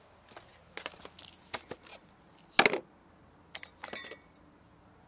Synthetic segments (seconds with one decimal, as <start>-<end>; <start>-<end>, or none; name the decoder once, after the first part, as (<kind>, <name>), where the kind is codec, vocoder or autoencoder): none